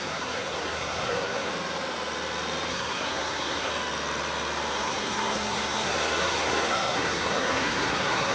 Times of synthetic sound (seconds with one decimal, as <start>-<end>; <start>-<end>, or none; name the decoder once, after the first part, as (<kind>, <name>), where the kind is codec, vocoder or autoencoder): 0.0-1.5 (codec, SNAC); 2.7-3.7; 4.7-8.3